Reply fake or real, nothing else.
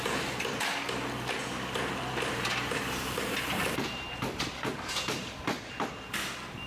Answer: fake